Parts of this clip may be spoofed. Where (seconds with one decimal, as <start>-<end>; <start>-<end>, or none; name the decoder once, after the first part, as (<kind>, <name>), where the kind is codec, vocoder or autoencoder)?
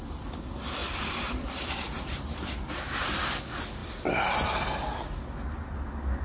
0.8-2.2 (vocoder, BigVGAN v2)